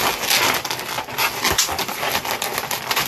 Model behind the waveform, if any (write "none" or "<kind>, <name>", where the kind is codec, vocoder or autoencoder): none